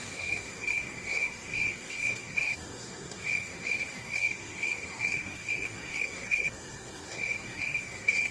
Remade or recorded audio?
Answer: remade